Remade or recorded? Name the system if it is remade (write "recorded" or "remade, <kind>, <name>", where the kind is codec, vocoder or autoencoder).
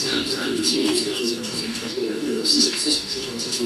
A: remade, codec, DAC